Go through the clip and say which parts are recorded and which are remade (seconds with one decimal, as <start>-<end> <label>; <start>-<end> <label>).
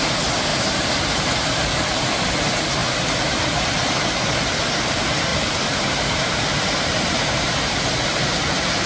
0.0-0.5 recorded; 0.5-2.0 remade; 2.0-5.3 recorded; 5.3-7.5 remade; 7.5-8.9 recorded